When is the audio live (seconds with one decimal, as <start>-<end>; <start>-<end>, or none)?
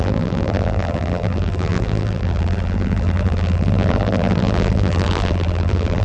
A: none